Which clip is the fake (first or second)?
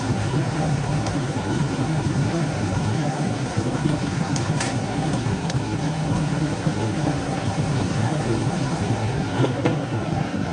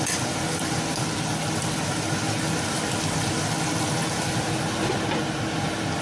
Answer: first